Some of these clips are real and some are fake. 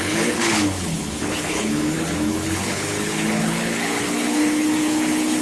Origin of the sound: fake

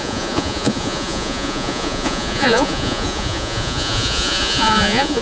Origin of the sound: fake